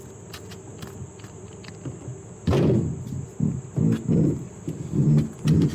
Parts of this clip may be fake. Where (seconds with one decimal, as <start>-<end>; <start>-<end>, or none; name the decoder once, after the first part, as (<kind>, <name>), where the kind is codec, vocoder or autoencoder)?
none